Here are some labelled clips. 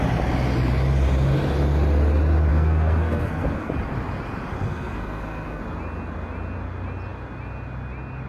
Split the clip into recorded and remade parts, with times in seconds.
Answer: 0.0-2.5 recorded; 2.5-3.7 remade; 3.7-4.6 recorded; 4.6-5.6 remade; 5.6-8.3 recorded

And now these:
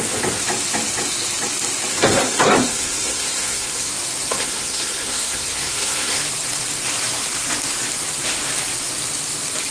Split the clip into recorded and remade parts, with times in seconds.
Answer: 0.0-1.9 recorded; 1.9-3.9 remade; 3.9-4.3 recorded; 4.3-6.2 remade; 6.2-9.7 recorded